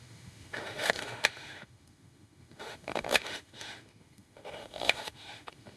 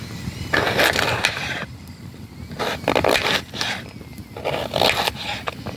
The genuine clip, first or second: second